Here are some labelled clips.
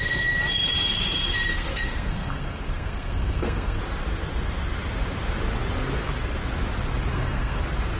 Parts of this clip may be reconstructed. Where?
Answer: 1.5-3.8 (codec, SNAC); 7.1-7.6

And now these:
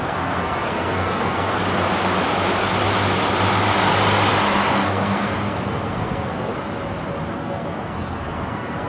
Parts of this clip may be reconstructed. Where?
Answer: 0.0-1.6 (codec, SNAC); 4.7-6.5; 7.3-8.9

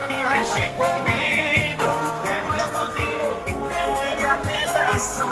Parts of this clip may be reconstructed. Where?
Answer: 0.0-5.3 (codec, SNAC)

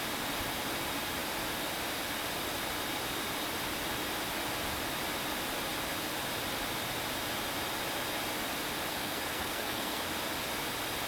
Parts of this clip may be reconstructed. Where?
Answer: 8.9-10.1 (codec, SNAC)